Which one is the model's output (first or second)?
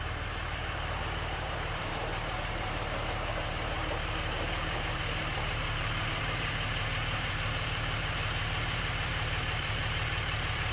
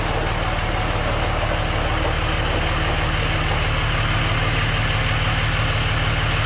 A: first